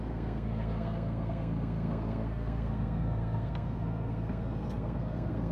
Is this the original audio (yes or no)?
no